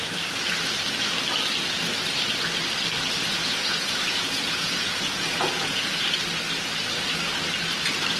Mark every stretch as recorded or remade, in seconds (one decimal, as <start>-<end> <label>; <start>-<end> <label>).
0.0-3.3 recorded; 3.3-6.2 remade; 6.2-8.2 recorded